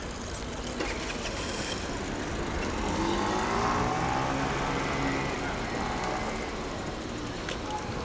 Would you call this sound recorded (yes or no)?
yes